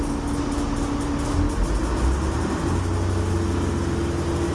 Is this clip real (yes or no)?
yes